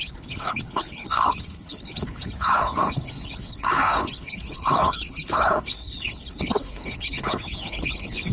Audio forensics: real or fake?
fake